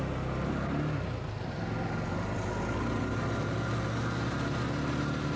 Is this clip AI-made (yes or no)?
no